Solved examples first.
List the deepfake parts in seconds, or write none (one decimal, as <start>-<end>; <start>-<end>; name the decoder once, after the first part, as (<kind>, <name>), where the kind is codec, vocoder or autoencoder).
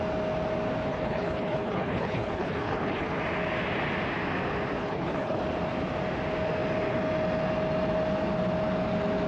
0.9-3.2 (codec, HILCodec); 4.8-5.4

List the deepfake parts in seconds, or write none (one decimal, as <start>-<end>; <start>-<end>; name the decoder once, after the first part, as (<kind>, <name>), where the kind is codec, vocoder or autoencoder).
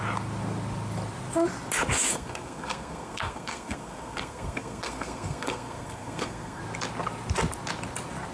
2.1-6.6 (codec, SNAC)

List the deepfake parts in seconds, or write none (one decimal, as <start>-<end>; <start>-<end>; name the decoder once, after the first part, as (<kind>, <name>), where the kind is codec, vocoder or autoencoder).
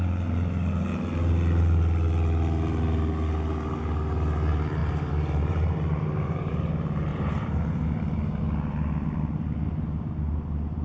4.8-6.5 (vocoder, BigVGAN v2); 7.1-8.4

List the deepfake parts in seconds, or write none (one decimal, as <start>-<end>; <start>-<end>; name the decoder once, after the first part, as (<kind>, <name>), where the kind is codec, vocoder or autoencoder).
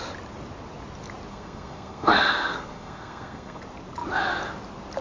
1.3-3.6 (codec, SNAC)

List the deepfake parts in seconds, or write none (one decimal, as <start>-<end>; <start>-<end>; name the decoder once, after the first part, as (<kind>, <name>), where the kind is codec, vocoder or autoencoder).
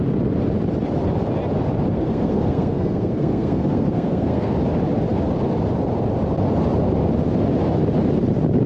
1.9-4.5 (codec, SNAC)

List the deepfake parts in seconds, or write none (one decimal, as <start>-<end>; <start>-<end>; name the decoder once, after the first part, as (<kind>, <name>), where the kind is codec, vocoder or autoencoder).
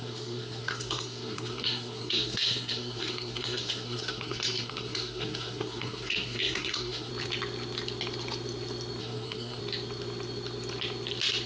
0.0-7.1 (codec, SNAC); 9.0-9.6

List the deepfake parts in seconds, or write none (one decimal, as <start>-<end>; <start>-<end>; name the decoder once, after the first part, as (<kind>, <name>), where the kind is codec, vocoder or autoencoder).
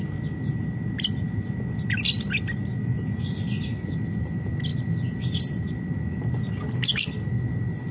none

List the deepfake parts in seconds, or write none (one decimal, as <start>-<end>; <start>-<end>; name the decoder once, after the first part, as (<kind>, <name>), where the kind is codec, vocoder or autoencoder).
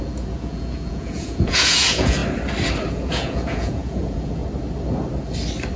0.0-2.2 (vocoder, Vocos); 2.9-4.4